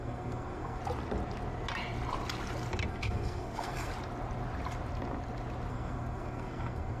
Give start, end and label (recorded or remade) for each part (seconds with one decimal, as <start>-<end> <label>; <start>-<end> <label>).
0.0-0.8 remade; 0.8-2.9 recorded; 2.9-3.9 remade; 3.9-5.7 recorded; 5.7-7.0 remade